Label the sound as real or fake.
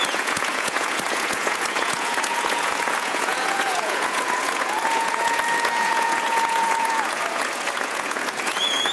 fake